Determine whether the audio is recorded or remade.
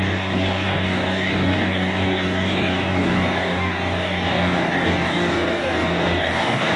remade